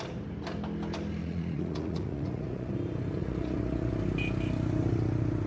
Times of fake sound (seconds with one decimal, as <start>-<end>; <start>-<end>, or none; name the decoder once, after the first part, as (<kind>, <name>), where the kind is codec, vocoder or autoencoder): 1.2-2.7 (vocoder, Vocos); 3.2-3.9